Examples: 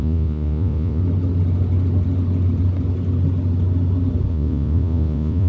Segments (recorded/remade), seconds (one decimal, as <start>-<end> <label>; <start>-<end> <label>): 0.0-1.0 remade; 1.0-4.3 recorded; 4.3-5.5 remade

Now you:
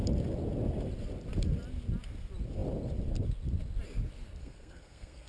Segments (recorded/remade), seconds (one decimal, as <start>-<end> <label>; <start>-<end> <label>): 0.0-4.4 recorded; 4.4-5.3 remade

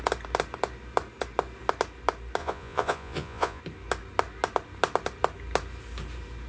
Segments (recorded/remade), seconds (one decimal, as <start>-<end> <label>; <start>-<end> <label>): 0.0-2.4 recorded; 2.4-3.6 remade; 3.6-6.5 recorded